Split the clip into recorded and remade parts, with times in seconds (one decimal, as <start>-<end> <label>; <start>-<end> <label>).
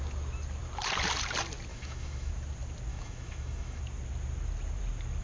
0.0-1.7 recorded; 1.7-2.3 remade; 2.3-2.9 recorded; 2.9-3.8 remade; 3.8-5.2 recorded